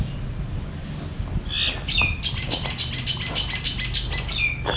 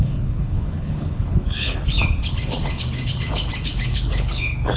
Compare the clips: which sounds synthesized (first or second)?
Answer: second